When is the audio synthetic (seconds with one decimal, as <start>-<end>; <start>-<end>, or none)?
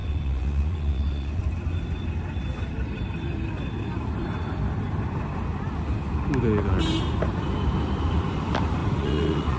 0.0-1.4; 8.8-9.6